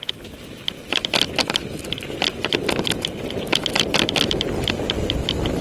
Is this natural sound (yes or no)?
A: yes